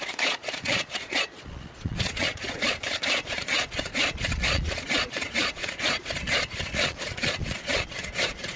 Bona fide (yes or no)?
no